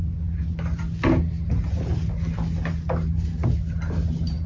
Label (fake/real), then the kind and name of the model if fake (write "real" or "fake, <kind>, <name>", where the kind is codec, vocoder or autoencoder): real